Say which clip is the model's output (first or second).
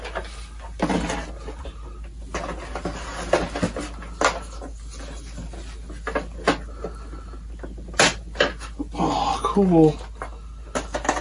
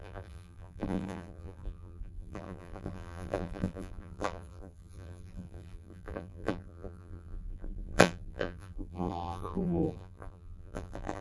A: second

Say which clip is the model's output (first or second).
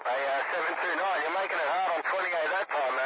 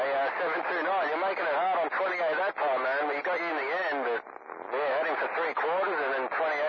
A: first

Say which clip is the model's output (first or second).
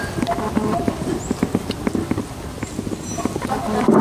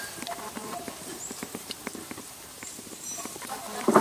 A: second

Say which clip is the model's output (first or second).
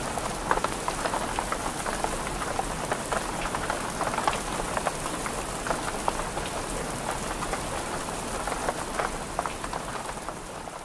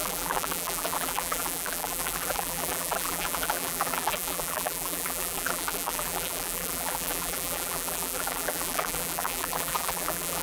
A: second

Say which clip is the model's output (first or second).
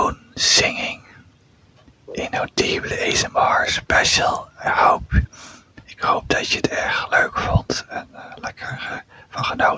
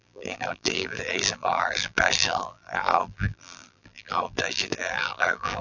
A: second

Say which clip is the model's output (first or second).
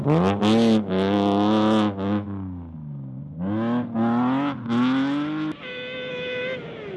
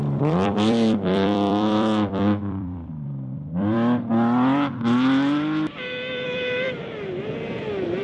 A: second